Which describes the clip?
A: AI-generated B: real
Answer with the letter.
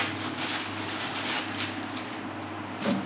B